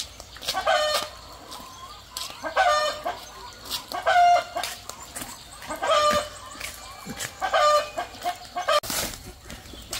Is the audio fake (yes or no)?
no